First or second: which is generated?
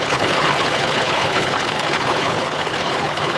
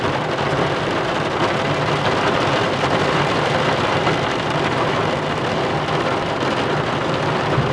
first